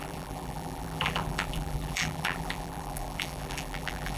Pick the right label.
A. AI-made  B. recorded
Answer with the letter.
A